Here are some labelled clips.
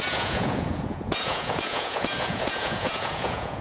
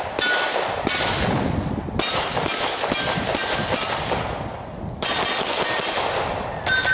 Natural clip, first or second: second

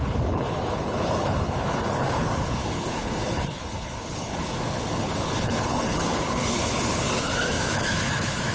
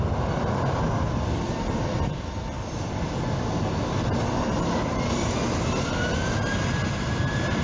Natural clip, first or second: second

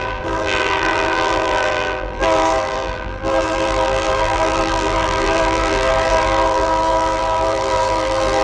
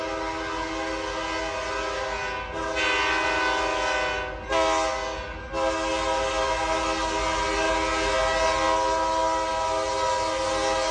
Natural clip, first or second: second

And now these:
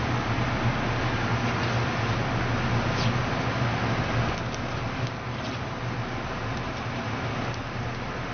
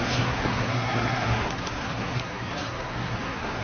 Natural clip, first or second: first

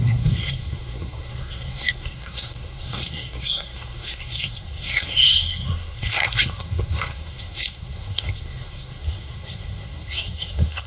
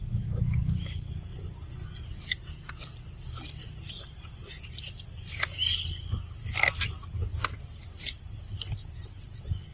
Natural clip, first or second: second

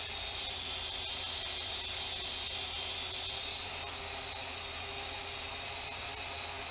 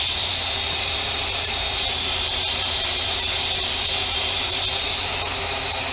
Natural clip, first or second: first